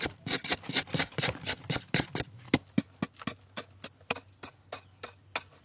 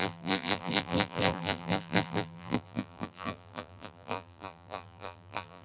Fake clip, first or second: second